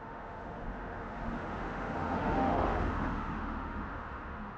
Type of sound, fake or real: fake